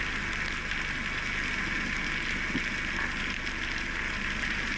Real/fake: real